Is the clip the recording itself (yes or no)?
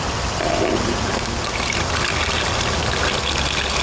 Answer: yes